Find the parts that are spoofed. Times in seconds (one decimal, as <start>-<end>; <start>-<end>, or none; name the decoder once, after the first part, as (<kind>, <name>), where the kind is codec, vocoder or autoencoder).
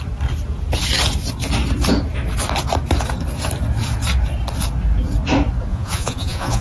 5.7-6.6 (vocoder, Vocos)